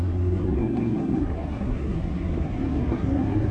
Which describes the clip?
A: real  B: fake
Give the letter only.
B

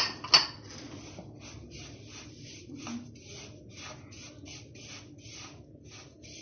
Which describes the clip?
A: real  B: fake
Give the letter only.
A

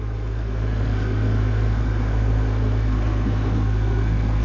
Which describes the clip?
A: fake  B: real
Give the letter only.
A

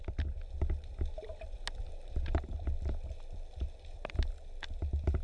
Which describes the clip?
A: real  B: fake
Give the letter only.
A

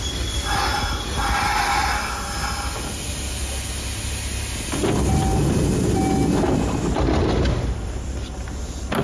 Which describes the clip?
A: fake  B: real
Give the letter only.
B